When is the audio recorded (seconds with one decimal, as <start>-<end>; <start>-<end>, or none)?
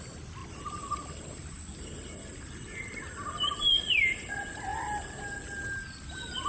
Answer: 0.0-0.4; 4.3-6.5